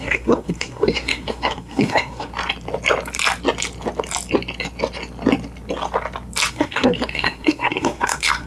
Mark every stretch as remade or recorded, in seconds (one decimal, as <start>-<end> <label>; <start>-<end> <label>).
0.0-2.3 remade; 2.3-6.5 recorded; 6.5-8.5 remade